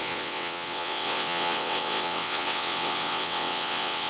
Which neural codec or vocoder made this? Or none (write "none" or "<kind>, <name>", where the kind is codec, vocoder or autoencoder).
vocoder, WaveNeXt